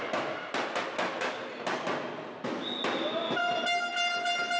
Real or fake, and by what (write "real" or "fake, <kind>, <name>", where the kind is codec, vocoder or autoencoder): real